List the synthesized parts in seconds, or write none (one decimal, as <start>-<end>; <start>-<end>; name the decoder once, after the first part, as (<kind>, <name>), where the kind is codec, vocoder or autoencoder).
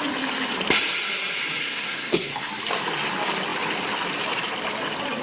1.6-2.5 (codec, SNAC)